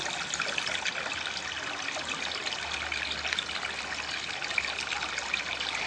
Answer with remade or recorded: recorded